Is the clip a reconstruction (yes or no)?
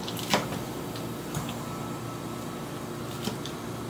no